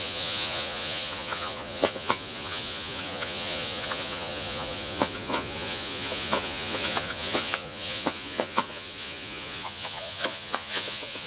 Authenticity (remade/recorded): remade